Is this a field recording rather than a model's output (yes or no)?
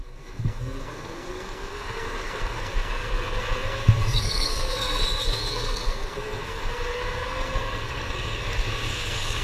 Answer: no